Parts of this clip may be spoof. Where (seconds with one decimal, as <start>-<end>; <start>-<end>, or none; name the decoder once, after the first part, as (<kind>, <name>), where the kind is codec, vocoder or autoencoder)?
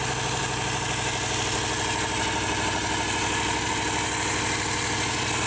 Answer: none